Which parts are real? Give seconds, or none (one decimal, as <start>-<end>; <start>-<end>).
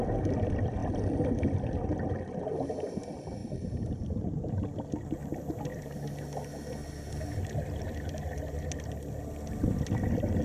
0.0-0.8; 1.3-3.4; 4.5-10.4